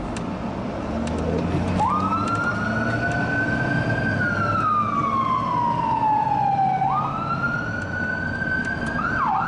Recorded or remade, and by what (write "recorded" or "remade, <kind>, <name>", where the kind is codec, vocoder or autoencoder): recorded